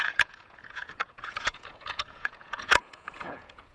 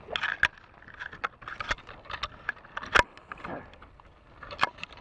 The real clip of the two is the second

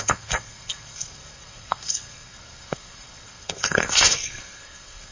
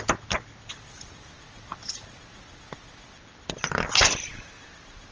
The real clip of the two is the second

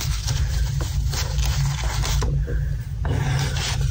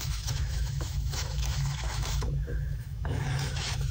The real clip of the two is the first